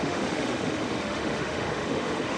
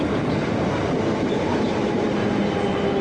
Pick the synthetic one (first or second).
first